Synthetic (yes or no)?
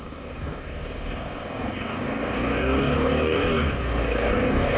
yes